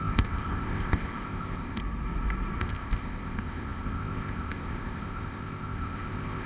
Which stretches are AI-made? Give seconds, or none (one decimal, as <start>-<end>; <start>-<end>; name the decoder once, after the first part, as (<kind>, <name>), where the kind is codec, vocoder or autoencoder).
0.0-1.8 (codec, ZipCodec); 2.6-6.5